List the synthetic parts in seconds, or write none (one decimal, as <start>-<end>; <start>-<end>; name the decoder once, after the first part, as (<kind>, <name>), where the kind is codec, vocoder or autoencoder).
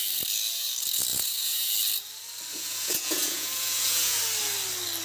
1.1-1.7 (vocoder, Vocos); 2.5-4.2